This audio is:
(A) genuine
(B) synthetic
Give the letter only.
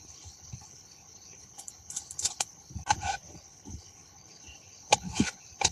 B